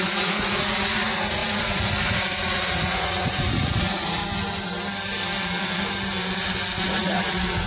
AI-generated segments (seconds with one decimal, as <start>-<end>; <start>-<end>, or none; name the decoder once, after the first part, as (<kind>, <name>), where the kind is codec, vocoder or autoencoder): 0.0-4.2 (vocoder, Vocos); 6.8-7.7